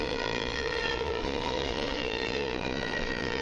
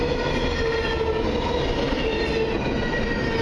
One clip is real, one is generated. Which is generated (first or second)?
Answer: first